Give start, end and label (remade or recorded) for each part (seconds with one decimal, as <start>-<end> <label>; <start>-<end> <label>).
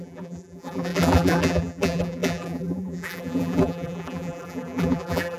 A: 0.0-5.4 remade